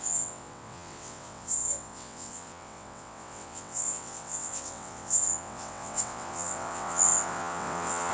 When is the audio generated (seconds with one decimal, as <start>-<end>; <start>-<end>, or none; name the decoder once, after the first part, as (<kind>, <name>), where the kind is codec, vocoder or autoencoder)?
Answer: 0.0-8.1 (vocoder, WaveNeXt)

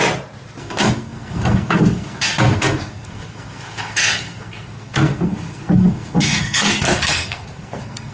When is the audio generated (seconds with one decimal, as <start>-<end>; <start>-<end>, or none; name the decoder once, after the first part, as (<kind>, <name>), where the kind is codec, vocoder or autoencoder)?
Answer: 0.6-8.1 (codec, SNAC)

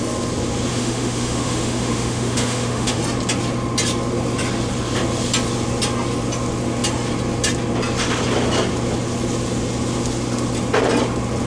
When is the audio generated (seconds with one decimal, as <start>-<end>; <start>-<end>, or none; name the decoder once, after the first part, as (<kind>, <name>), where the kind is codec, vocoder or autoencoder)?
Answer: 0.7-3.0 (autoencoder, DAC-VAE)

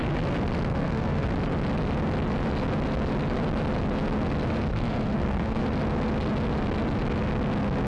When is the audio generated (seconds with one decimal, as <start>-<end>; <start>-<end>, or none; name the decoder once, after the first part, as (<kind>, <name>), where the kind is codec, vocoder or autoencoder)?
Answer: 0.7-1.3 (codec, SNAC); 4.7-5.6

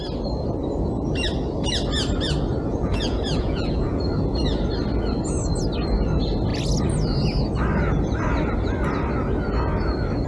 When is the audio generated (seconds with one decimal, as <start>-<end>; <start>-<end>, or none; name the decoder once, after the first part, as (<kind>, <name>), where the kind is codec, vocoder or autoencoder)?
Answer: 2.7-4.0 (vocoder, Vocos)

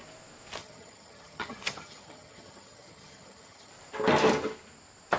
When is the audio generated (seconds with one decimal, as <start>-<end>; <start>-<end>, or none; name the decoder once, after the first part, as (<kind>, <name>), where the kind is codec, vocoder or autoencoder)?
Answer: 0.6-3.7 (vocoder, HiFi-GAN)